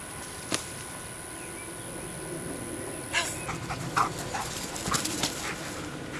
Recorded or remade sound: recorded